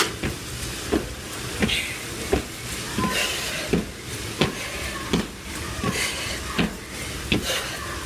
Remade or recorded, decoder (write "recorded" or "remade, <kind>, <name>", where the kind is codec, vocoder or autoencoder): recorded